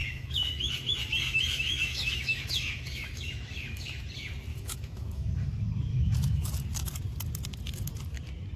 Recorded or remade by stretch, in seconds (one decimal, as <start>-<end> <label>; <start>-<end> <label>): 0.0-4.0 remade; 4.0-4.5 recorded; 4.5-5.3 remade; 5.3-5.9 recorded; 5.9-6.5 remade; 6.5-8.6 recorded